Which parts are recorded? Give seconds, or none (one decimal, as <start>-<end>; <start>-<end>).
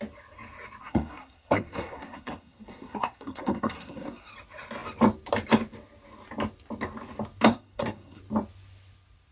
0.0-0.8; 4.3-7.5; 8.2-9.3